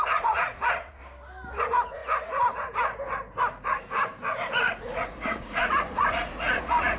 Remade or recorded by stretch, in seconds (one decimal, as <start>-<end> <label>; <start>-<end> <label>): 0.0-1.0 remade; 1.0-1.6 recorded; 1.6-2.0 remade; 2.0-4.5 recorded; 4.5-7.0 remade